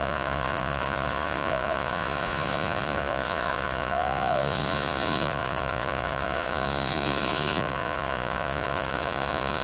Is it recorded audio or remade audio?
remade